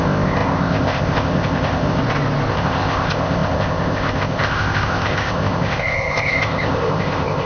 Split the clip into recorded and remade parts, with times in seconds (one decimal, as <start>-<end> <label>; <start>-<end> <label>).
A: 0.0-2.0 remade; 2.0-2.5 recorded; 2.5-7.5 remade